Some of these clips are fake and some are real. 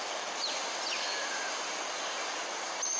real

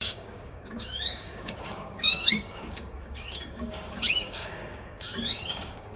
fake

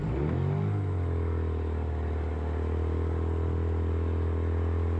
real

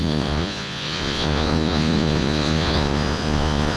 fake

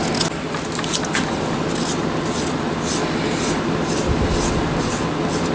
real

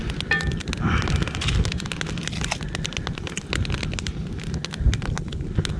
real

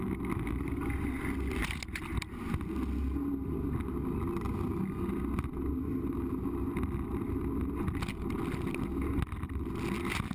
real